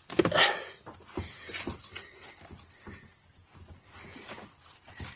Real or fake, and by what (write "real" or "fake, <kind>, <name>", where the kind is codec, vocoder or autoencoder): real